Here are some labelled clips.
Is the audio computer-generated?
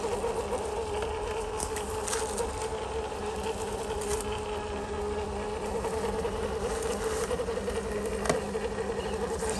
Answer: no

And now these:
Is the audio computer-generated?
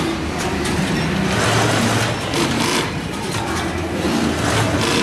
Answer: no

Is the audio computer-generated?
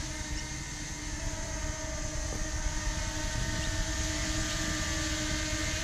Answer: no